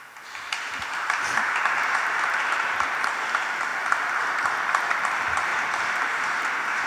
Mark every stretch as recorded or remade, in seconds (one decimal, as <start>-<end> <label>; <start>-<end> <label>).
0.0-3.7 remade; 3.7-4.2 recorded; 4.2-6.9 remade